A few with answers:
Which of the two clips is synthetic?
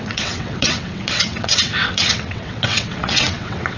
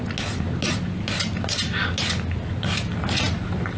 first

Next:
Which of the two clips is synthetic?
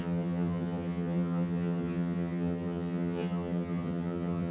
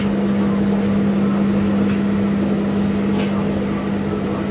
first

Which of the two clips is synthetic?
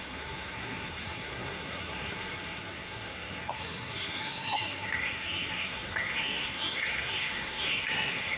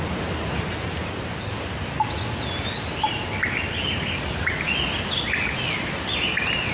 first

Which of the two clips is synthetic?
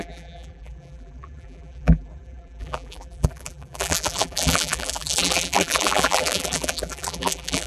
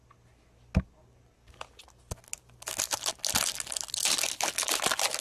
first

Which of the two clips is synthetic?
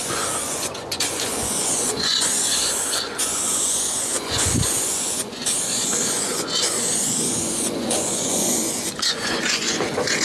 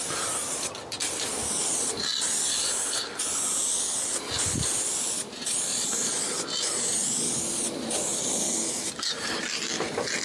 first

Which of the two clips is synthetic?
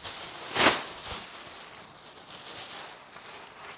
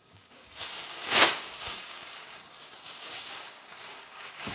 second